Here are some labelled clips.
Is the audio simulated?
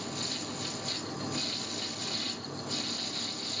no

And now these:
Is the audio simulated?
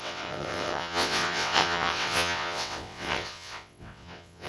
yes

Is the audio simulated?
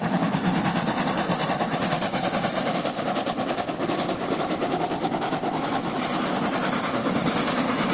no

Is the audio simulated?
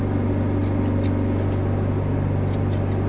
no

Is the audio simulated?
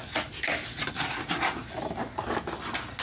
no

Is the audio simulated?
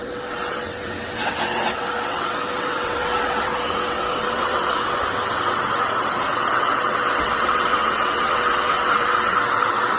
yes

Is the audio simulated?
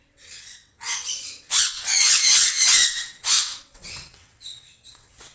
yes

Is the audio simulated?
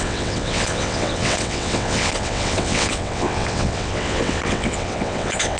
yes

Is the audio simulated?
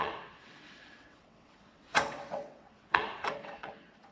yes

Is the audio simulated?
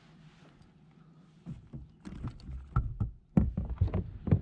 no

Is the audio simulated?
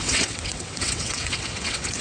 yes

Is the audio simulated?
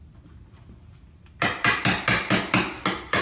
no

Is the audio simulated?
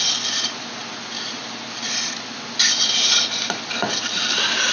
no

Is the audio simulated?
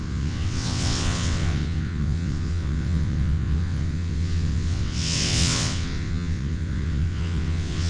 yes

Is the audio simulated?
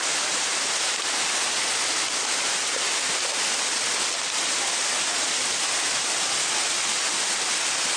no